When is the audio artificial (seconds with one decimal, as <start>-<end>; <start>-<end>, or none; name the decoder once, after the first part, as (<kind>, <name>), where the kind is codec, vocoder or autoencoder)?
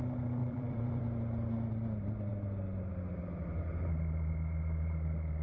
0.4-1.0 (vocoder, BigVGAN v2)